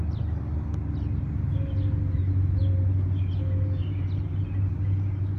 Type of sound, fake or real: real